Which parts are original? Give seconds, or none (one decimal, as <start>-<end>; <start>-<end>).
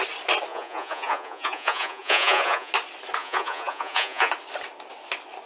0.0-0.5; 2.7-3.2; 4.3-5.5